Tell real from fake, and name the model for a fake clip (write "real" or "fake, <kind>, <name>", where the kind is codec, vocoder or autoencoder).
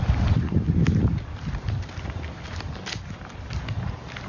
real